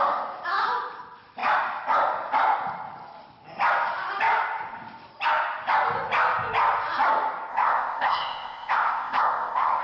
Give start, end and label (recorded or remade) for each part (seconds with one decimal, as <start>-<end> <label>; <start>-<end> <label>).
0.0-7.5 recorded; 7.5-9.8 remade